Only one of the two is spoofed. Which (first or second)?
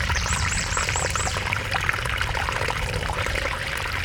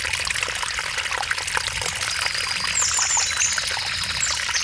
first